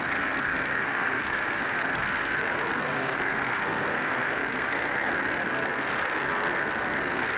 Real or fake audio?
fake